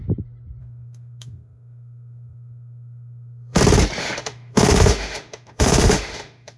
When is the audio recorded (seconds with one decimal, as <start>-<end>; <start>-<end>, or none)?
0.0-0.6; 3.6-4.0